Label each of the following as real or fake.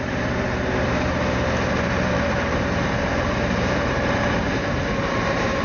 fake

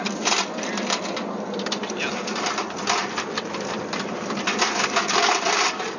fake